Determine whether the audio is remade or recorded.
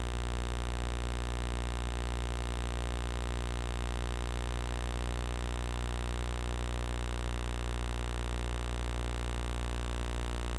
recorded